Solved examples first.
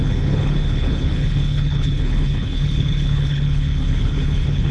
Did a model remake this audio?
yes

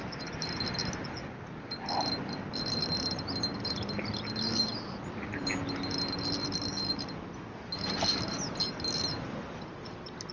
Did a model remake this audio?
no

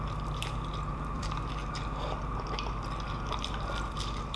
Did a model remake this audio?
yes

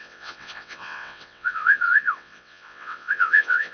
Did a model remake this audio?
yes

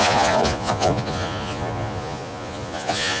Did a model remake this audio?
yes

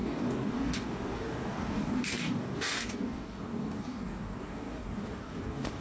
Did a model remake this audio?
yes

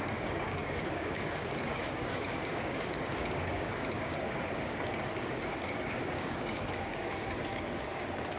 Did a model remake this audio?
yes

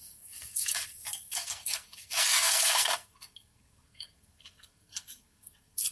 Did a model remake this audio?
yes